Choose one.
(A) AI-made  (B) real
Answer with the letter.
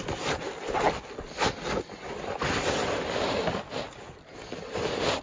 B